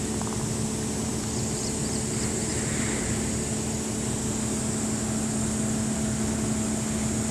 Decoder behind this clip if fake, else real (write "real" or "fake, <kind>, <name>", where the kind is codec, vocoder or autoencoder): real